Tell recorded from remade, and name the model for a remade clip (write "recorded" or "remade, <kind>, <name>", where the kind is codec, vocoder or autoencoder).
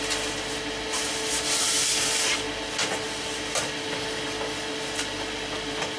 recorded